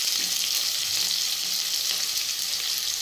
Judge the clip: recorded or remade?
recorded